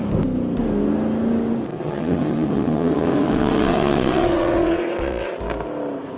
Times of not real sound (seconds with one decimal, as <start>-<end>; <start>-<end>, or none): 1.7-5.4